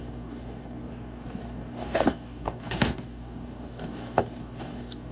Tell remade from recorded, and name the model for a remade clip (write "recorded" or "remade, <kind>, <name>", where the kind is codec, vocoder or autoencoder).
remade, codec, DAC